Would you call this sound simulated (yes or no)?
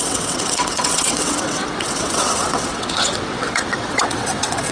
yes